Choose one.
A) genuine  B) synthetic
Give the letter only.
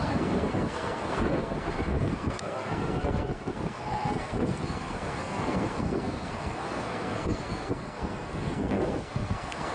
B